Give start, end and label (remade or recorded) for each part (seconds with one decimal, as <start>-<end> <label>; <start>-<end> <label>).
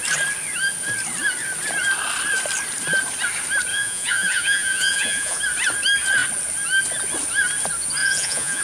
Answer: 0.0-3.7 recorded; 3.7-5.4 remade; 5.4-8.0 recorded; 8.0-8.6 remade